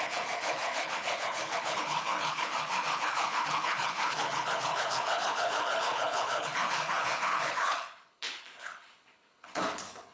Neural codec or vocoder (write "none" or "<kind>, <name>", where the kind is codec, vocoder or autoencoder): codec, HILCodec